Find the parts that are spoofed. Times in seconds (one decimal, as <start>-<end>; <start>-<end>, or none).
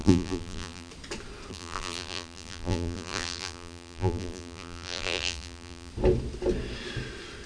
0.0-0.9; 1.5-5.9